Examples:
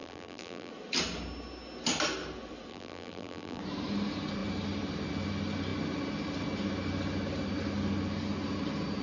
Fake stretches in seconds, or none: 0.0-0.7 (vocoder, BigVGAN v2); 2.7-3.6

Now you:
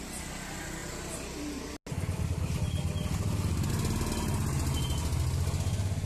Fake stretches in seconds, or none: none

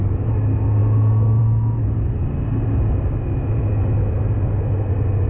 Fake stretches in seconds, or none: none

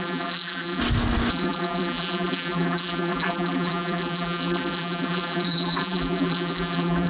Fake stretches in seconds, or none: 0.0-0.8 (vocoder, BigVGAN v2); 1.3-7.1